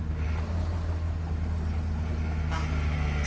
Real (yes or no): yes